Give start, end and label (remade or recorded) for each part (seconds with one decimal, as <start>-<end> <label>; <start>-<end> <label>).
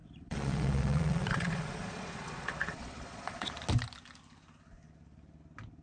0.0-3.5 remade; 3.5-5.8 recorded